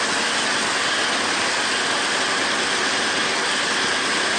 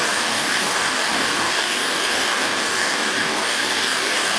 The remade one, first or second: second